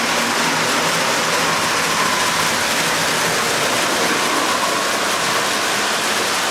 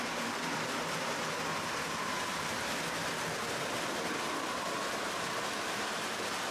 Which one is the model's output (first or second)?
second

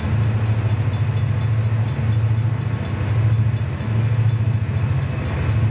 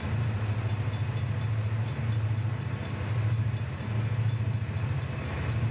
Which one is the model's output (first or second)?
second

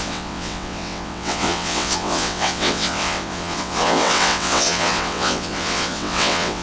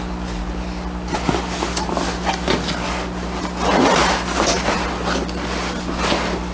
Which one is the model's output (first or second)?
first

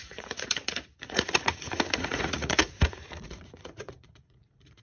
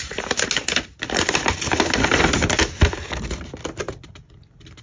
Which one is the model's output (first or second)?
first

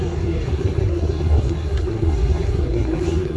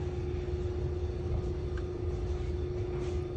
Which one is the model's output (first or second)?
first